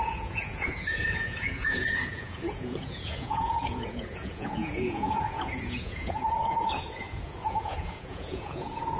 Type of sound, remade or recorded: remade